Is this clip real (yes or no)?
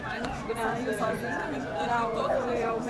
no